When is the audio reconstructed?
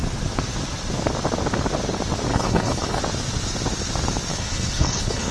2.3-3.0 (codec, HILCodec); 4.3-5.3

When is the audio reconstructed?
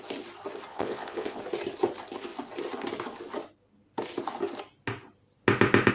0.7-1.4 (vocoder, Vocos)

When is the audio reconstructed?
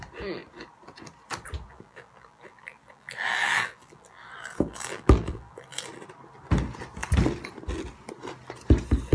1.7-5.9 (vocoder, BigVGAN v2)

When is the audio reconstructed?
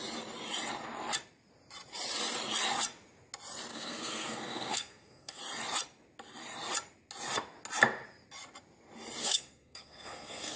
3.7-5.4 (codec, SNAC); 9.2-10.6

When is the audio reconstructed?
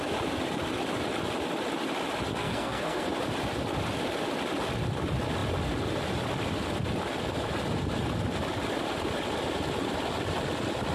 2.4-3.1 (codec, SNAC)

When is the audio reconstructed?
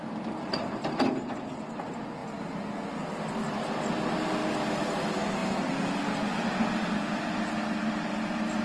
none